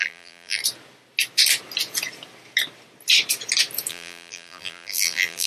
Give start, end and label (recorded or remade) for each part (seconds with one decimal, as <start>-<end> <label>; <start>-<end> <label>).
0.0-0.6 remade; 0.6-3.9 recorded; 3.9-5.5 remade